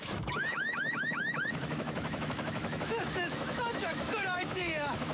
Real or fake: fake